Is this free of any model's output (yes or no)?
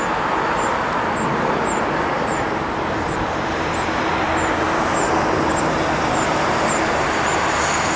yes